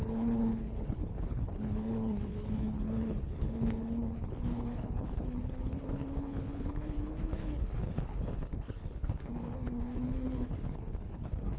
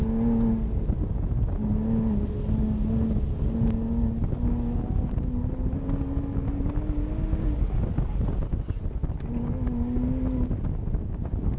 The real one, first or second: second